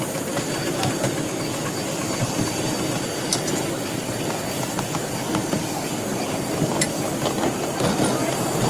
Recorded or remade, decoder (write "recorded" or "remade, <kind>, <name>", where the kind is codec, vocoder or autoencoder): recorded